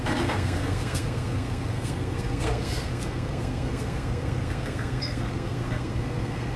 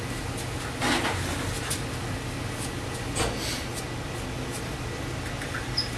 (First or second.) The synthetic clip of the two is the first